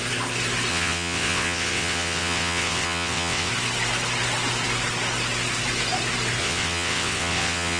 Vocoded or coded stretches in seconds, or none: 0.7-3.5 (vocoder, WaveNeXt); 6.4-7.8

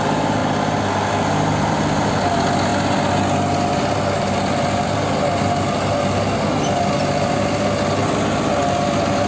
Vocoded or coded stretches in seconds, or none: none

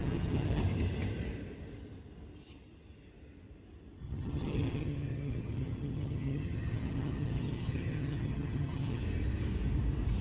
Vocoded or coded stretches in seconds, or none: 0.0-0.6 (vocoder, HiFi-GAN); 4.0-9.0

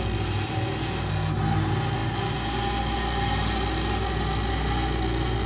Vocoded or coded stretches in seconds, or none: none

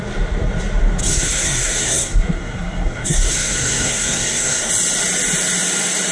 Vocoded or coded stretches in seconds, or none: 1.0-4.7 (codec, SNAC)